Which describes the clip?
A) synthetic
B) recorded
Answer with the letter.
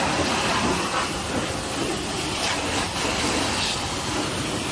B